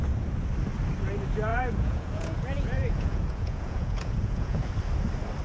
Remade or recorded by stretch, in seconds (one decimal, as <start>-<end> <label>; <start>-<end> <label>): 0.0-1.5 recorded; 1.5-4.7 remade; 4.7-5.4 recorded